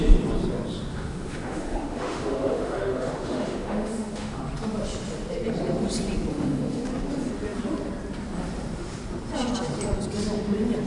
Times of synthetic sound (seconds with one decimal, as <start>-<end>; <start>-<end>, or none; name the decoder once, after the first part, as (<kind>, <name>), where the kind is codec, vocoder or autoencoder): 0.9-4.4 (autoencoder, DAC-VAE); 6.3-6.9